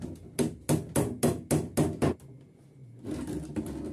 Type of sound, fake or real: real